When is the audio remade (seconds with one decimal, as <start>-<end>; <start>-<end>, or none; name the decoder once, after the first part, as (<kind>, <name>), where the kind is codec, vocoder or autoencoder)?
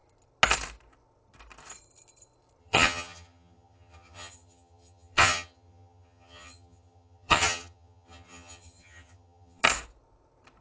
2.6-9.6 (vocoder, HiFi-GAN)